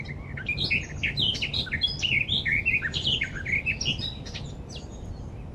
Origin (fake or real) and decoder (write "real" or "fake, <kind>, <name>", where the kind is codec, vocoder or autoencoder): real